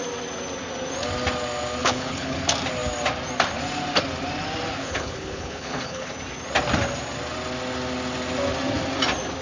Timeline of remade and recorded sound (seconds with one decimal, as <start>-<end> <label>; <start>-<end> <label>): 0.0-1.8 recorded; 1.8-2.4 remade; 2.4-4.8 recorded; 4.8-6.1 remade; 6.1-9.4 recorded